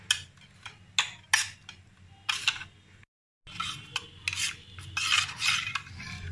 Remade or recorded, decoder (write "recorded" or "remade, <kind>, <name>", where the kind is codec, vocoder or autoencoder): recorded